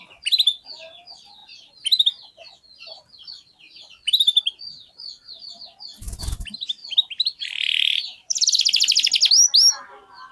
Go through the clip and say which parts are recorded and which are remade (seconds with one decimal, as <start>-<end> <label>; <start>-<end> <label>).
0.0-7.9 recorded; 7.9-8.6 remade; 8.6-10.3 recorded